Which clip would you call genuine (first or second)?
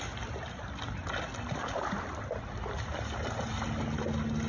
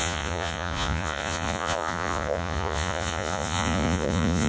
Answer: first